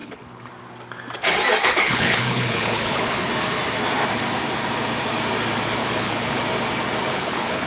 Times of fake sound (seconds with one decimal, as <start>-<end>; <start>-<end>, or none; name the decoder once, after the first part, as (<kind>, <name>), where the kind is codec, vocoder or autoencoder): 0.0-0.5 (codec, HILCodec); 1.6-3.3; 5.8-6.4; 7.1-7.7